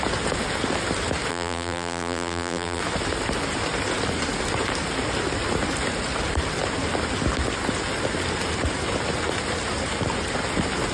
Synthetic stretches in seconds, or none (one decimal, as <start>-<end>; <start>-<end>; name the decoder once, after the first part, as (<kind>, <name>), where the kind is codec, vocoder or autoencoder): 1.3-2.8 (vocoder, BigVGAN v2)